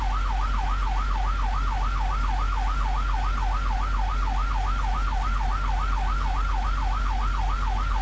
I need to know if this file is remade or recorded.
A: recorded